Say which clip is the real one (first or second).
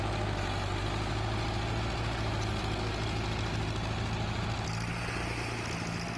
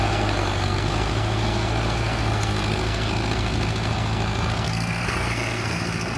first